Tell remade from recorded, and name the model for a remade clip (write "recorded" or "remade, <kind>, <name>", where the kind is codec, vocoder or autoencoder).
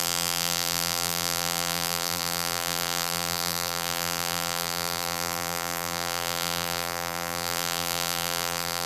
remade, vocoder, BigVGAN v2